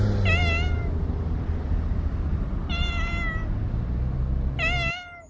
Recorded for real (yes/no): yes